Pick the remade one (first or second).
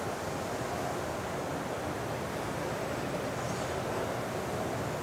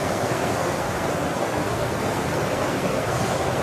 second